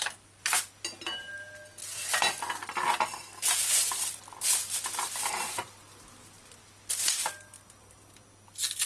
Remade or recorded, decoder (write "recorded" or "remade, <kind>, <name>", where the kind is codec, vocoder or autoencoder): recorded